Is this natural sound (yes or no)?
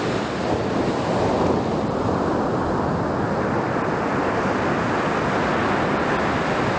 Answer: yes